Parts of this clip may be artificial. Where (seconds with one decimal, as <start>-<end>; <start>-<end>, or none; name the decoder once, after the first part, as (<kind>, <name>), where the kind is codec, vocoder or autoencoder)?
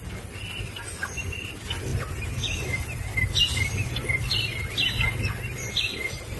none